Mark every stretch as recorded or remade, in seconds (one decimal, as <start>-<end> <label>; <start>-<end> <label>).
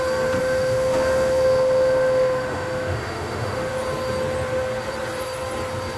0.0-0.4 recorded; 0.4-3.7 remade; 3.7-6.0 recorded